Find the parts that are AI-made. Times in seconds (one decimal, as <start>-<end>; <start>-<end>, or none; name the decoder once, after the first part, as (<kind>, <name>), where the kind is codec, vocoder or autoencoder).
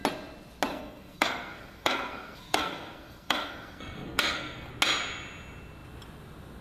0.7-4.7 (codec, SNAC)